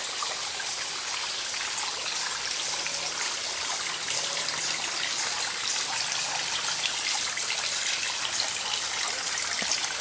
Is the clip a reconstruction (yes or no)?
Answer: no